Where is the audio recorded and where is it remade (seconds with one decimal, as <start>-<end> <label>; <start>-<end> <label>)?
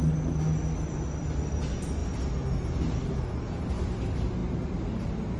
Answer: 0.0-5.4 recorded